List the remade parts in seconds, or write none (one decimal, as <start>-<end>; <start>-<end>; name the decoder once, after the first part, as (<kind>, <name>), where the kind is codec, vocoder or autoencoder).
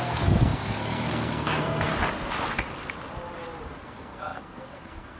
0.0-1.9 (codec, SNAC); 3.8-5.2